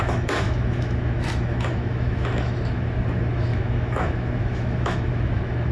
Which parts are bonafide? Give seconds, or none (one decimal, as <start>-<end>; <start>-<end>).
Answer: none